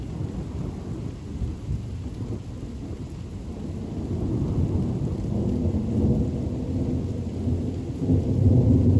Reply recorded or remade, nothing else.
recorded